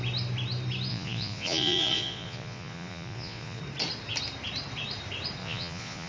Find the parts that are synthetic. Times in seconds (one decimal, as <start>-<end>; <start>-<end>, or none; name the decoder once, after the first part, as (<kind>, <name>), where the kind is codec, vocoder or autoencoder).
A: 0.9-3.6 (vocoder, Vocos); 5.4-6.1